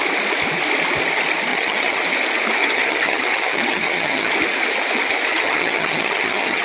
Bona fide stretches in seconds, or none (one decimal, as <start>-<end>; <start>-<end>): 0.0-1.5; 2.0-2.6; 4.3-5.3